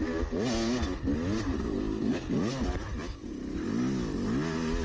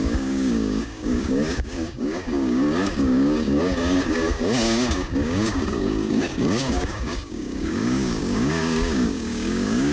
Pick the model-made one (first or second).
second